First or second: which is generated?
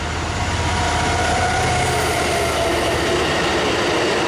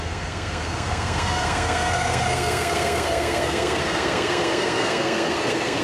second